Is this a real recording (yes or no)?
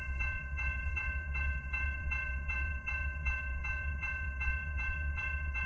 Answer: no